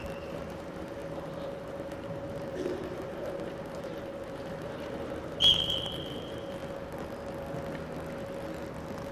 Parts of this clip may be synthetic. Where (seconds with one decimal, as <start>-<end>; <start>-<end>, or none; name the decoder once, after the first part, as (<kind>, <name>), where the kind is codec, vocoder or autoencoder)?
0.0-6.6 (vocoder, BigVGAN v2)